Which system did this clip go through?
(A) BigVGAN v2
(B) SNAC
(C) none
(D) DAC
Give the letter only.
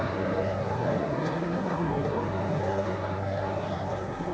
B